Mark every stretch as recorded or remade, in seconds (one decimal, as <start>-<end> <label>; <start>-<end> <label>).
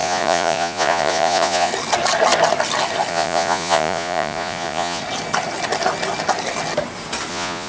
0.0-1.7 remade; 1.7-3.1 recorded; 3.1-5.0 remade; 5.0-7.3 recorded; 7.3-7.7 remade